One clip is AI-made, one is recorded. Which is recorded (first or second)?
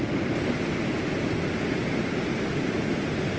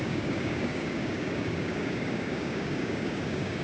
first